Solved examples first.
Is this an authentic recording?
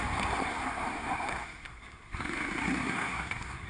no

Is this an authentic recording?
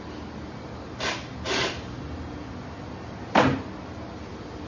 yes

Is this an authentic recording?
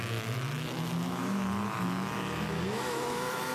no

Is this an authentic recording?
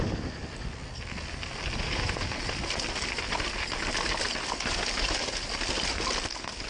yes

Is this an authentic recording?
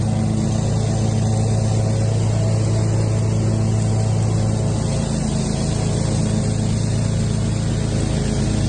yes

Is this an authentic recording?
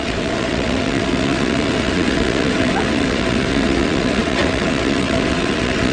no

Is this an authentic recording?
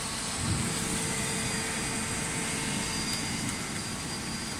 yes